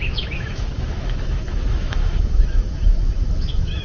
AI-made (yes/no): yes